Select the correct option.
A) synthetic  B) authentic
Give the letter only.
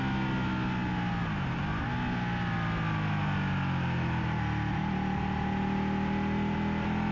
B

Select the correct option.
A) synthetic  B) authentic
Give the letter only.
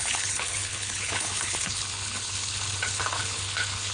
A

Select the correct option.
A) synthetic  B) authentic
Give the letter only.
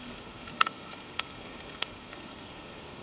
A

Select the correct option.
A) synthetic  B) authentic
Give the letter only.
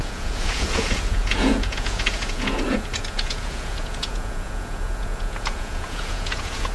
A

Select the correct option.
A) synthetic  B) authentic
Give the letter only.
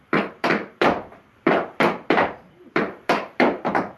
A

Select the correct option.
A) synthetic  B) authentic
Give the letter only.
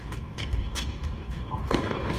A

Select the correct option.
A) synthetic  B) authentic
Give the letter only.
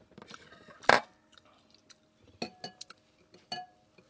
B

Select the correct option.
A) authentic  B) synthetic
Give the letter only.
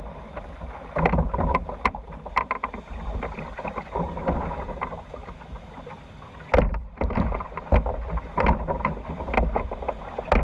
A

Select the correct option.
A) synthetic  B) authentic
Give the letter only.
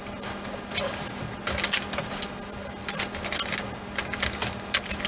B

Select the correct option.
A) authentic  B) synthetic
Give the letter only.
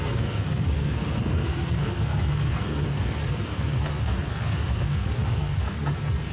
B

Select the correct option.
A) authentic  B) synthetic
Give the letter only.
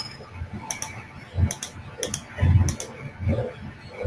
A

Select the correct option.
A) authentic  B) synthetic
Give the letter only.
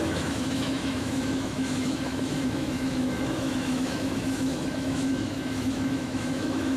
B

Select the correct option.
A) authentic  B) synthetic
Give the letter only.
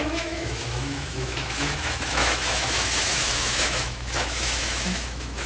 B